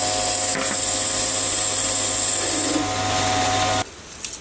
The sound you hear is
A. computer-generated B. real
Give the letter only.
B